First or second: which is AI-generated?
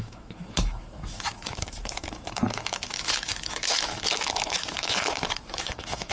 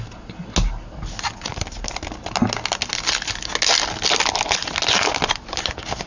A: first